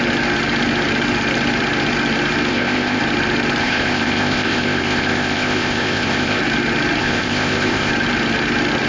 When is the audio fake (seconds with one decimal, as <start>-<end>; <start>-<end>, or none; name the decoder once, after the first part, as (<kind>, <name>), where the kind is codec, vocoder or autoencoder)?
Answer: 2.5-3.0 (codec, ZipCodec); 3.6-6.4; 7.0-7.9